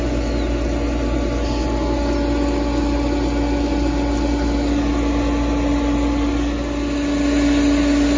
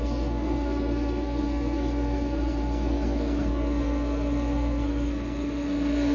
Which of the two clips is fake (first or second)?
second